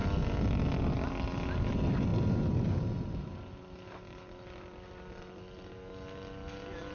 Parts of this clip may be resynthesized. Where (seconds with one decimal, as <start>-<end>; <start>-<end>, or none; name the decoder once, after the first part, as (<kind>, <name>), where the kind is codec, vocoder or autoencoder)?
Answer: none